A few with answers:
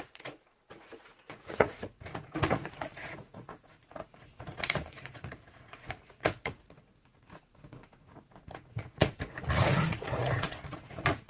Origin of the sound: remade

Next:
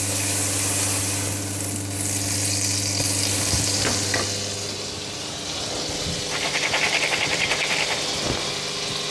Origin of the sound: recorded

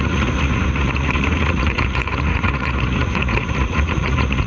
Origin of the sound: remade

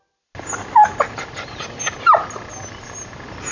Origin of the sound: recorded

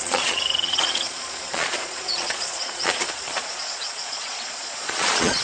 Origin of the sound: remade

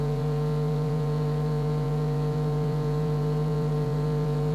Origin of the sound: remade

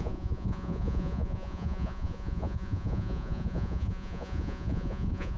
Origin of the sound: remade